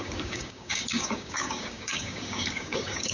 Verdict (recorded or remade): remade